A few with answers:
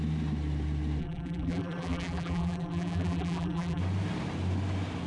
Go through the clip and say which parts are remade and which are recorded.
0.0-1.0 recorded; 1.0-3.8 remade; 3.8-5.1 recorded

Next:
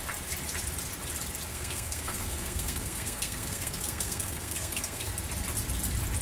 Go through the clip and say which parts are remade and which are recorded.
0.0-1.5 recorded; 1.5-5.1 remade; 5.1-6.2 recorded

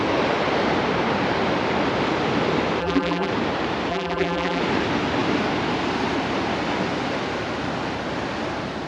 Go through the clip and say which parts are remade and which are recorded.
0.0-2.8 recorded; 2.8-3.3 remade; 3.3-3.9 recorded; 3.9-4.6 remade; 4.6-8.9 recorded